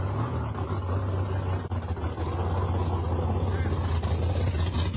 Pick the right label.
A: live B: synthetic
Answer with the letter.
A